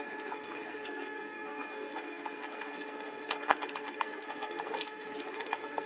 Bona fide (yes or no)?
no